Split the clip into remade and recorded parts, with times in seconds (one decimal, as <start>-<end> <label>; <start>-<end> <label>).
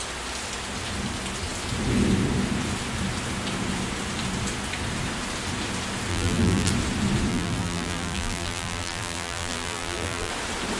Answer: 0.0-6.1 recorded; 6.1-6.7 remade; 6.7-7.3 recorded; 7.3-10.3 remade; 10.3-10.8 recorded